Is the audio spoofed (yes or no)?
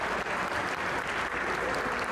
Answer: no